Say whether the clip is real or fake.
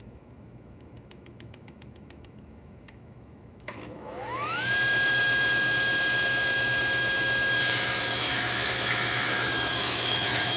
fake